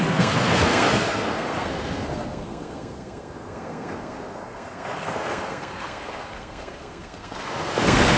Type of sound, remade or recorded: remade